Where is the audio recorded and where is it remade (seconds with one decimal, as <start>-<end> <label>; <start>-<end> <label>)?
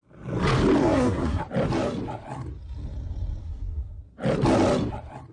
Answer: 0.0-0.8 recorded; 0.8-1.4 remade; 1.4-3.4 recorded; 3.4-4.0 remade; 4.0-5.3 recorded